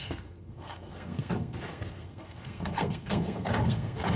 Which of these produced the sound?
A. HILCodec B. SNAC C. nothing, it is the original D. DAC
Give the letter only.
B